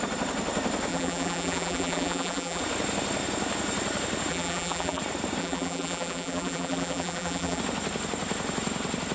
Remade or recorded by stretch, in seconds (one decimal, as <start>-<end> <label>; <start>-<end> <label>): 0.0-0.9 recorded; 0.9-2.6 remade; 2.6-4.3 recorded; 4.3-5.0 remade; 5.0-5.4 recorded; 5.4-7.6 remade; 7.6-9.1 recorded

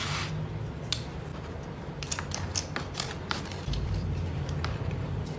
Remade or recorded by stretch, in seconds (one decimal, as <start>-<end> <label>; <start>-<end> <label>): 0.0-1.3 recorded; 1.3-4.1 remade; 4.1-5.4 recorded

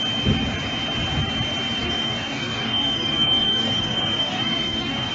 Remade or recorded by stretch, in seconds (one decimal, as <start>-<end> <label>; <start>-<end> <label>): 0.0-1.8 recorded; 1.8-5.1 remade

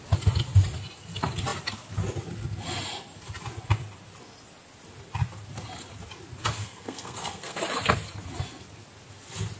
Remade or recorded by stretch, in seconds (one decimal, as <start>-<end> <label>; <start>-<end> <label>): 0.0-6.5 recorded; 6.5-7.6 remade; 7.6-9.6 recorded

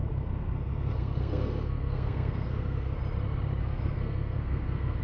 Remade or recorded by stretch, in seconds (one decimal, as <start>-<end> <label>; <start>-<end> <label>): 0.0-3.0 remade; 3.0-3.6 recorded; 3.6-5.0 remade

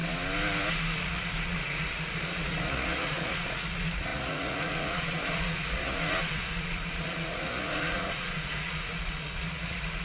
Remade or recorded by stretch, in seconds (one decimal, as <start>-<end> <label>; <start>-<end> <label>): 0.0-1.0 recorded; 1.0-10.0 remade

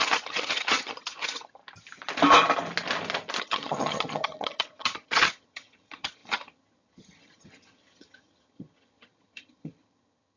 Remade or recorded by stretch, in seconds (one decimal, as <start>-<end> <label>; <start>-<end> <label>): 0.0-1.6 remade; 1.6-3.4 recorded; 3.4-10.4 remade